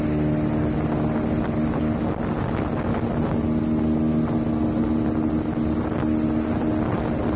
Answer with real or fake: real